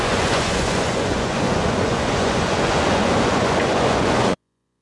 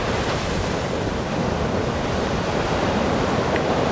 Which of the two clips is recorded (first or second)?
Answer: second